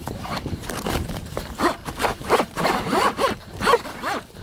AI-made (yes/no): yes